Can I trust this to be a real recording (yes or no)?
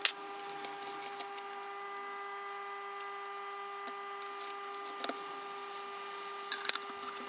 yes